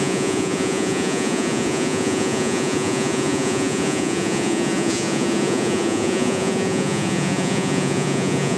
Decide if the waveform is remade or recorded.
remade